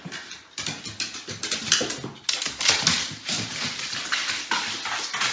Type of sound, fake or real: real